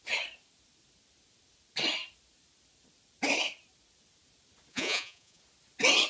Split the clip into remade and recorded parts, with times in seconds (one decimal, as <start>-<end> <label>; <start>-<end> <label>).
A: 0.0-4.7 recorded; 4.7-5.4 remade; 5.4-6.1 recorded